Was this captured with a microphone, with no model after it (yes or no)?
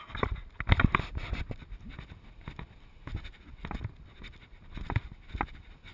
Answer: yes